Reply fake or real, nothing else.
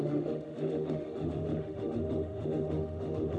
fake